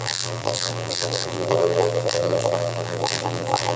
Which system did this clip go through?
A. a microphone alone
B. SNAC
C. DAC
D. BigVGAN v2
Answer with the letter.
D